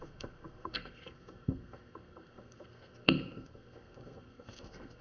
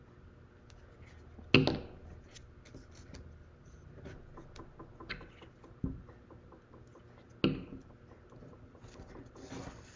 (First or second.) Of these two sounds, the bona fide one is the second